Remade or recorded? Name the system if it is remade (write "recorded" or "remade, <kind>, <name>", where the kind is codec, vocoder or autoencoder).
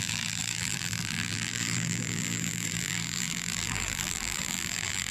remade, vocoder, BigVGAN v2